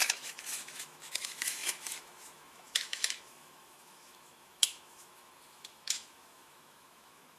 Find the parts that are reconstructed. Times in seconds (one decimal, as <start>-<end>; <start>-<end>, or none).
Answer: 0.0-7.4